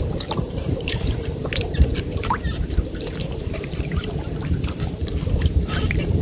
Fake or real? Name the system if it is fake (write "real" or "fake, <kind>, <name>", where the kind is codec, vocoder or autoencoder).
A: fake, vocoder, BigVGAN v2